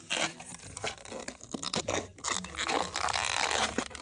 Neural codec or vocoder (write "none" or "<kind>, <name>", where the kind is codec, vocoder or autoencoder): vocoder, BigVGAN v2